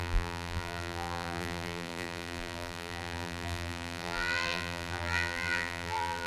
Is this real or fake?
fake